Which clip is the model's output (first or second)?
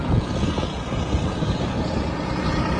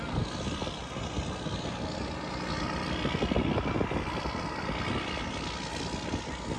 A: first